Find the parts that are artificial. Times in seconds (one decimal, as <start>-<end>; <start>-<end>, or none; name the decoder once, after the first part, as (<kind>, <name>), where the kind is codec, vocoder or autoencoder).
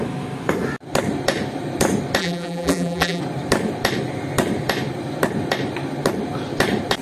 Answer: 2.2-3.2 (vocoder, BigVGAN v2)